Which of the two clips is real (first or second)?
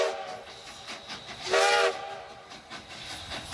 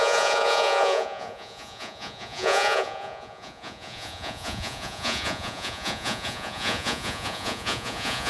first